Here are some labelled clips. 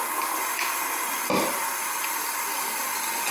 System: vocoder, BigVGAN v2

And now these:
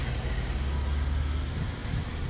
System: none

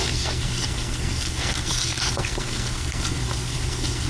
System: codec, SNAC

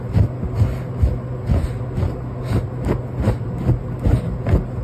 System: none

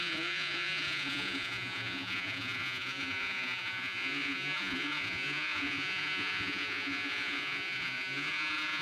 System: vocoder, Vocos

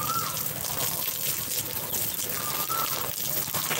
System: none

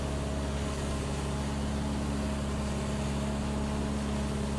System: none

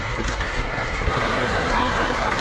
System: codec, SNAC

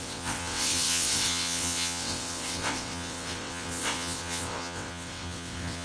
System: vocoder, WaveNeXt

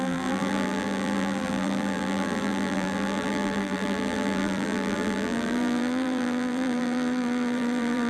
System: vocoder, BigVGAN v2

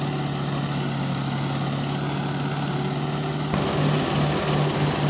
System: none